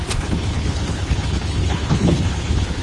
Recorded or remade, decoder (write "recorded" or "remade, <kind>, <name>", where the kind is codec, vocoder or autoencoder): remade, codec, HILCodec